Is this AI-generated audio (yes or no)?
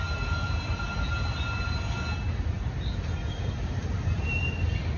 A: no